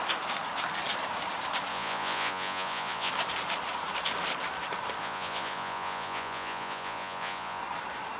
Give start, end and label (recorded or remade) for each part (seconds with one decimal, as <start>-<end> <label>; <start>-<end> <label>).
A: 0.0-1.7 recorded; 1.7-3.1 remade; 3.1-5.0 recorded; 5.0-7.6 remade; 7.6-8.2 recorded